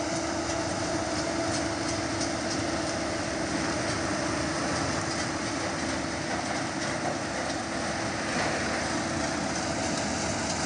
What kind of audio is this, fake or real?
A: real